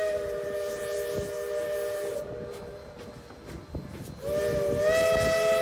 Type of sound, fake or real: real